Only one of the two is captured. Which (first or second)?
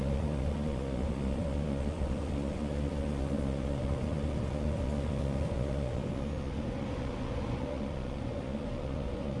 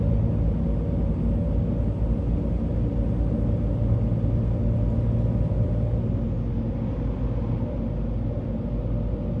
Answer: second